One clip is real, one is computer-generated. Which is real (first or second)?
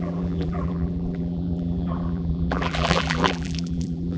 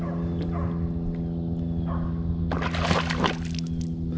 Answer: second